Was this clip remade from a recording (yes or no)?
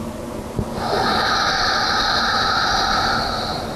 no